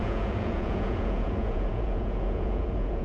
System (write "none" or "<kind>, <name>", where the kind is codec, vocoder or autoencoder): vocoder, Vocos